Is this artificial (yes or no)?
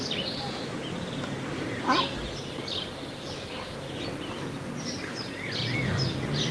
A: no